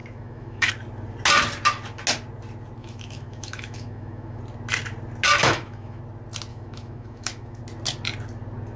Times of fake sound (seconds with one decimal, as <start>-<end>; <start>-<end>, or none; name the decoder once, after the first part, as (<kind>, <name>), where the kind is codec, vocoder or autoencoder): 0.0-0.7 (autoencoder, DAC-VAE); 2.8-4.4; 5.4-6.0; 6.5-7.6